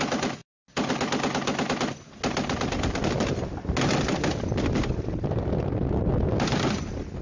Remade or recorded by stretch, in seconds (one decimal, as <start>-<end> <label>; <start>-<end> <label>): 0.0-7.2 recorded